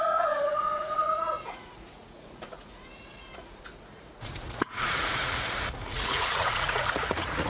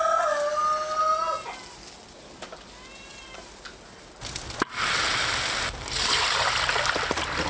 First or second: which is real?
second